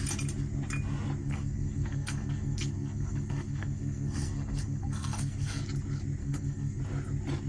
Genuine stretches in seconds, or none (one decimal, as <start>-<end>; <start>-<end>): 0.0-1.2; 5.6-6.2; 6.8-7.5